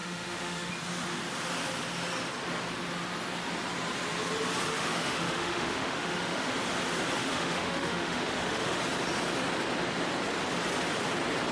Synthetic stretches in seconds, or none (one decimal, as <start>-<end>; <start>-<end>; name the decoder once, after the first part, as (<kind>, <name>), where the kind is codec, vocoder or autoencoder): 0.0-0.7 (autoencoder, DAC-VAE); 4.7-6.5; 7.2-8.8